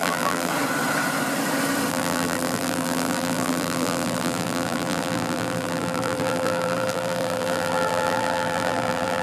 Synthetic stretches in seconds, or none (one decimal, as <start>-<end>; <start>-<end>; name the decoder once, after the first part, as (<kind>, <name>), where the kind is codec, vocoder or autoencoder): 0.0-0.5 (vocoder, BigVGAN v2); 1.9-9.2